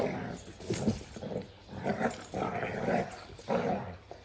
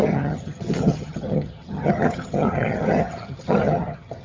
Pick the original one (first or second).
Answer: first